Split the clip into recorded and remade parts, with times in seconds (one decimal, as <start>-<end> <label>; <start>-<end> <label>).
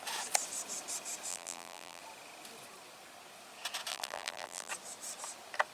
0.0-1.3 recorded; 1.3-2.0 remade; 2.0-3.9 recorded; 3.9-4.7 remade; 4.7-5.7 recorded